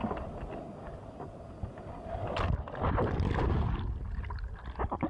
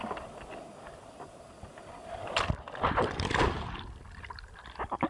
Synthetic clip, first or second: second